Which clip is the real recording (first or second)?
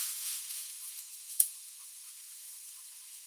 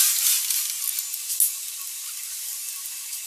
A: second